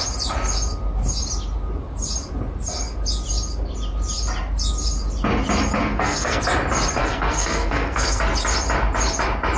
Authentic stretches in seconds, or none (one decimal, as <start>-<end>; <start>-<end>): 0.0-5.8; 6.4-7.0; 8.2-9.6